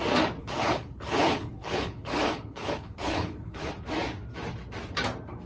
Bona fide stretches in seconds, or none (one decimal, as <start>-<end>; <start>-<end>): 0.0-0.4; 3.7-5.5